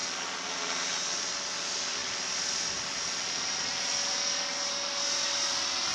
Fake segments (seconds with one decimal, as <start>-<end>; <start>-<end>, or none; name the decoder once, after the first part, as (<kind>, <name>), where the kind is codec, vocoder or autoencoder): none

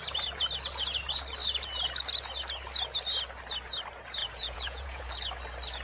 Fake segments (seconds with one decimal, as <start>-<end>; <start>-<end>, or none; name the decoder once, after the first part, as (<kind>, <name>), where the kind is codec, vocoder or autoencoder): 4.2-5.0 (vocoder, Vocos)

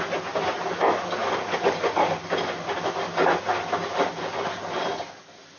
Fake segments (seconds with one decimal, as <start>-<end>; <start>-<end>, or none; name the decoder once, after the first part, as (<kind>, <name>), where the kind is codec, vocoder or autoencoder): none

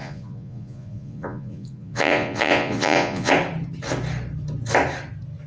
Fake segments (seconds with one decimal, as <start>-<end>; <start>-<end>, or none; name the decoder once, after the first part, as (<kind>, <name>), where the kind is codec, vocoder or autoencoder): 0.0-3.3 (vocoder, Vocos)